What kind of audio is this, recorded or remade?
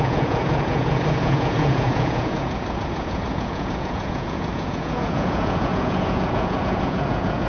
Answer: remade